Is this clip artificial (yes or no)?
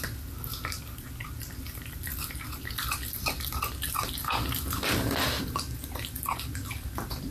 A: no